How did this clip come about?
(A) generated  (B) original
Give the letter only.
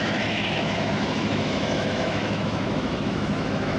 A